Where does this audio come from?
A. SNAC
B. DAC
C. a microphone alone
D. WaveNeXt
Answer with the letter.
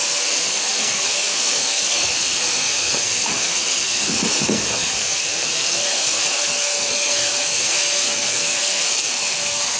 A